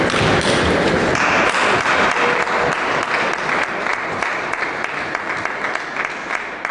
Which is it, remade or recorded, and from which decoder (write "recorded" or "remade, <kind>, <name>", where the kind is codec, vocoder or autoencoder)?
recorded